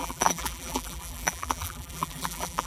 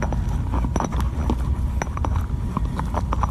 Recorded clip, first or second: second